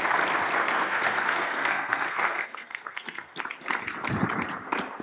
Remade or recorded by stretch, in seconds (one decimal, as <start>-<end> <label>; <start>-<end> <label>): 0.0-0.6 recorded; 0.6-3.4 remade; 3.4-5.0 recorded